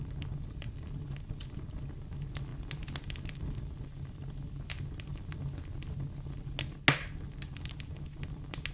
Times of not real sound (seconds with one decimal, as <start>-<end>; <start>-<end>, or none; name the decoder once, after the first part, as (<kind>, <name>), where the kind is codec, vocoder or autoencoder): none